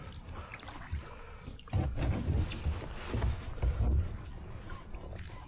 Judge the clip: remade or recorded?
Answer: recorded